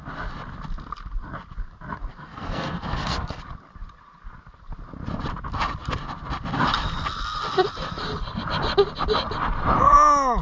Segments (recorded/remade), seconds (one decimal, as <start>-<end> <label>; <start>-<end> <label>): 0.0-2.1 recorded; 2.1-3.4 remade; 3.4-10.4 recorded